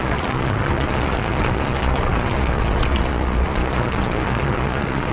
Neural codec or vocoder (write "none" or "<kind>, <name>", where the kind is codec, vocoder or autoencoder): vocoder, Vocos